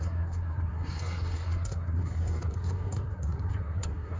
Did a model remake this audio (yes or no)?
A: yes